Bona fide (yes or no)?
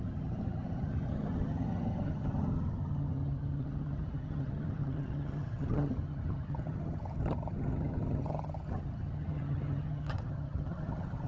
no